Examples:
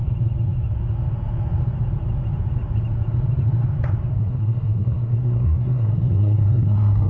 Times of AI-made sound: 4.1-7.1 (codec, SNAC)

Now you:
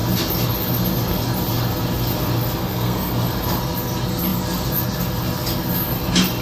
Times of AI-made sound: 2.6-3.1 (codec, SNAC)